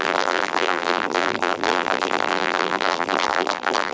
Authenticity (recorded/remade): remade